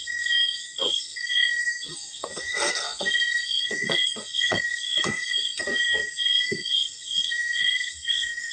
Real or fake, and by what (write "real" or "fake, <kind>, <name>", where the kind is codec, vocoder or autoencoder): fake, codec, SNAC